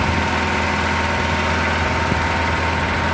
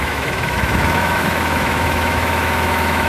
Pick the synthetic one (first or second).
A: second